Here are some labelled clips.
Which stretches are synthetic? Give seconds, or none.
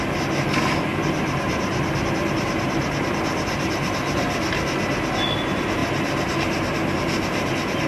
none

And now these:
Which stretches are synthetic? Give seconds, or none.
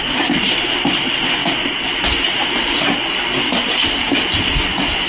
none